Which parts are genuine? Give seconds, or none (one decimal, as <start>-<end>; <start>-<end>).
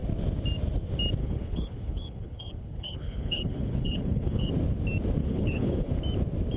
0.0-1.2; 4.5-5.2; 5.9-6.6